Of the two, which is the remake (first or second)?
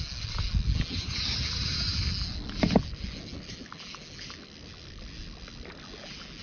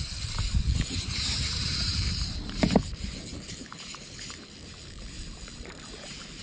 second